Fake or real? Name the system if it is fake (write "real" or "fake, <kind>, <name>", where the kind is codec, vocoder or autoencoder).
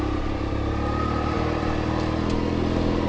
real